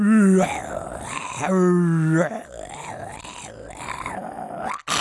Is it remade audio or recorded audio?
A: recorded